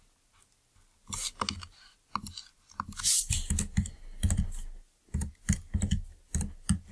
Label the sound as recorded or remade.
recorded